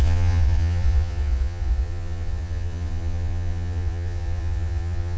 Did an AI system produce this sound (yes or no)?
yes